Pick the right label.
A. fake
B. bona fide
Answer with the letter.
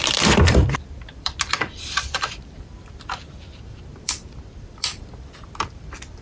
A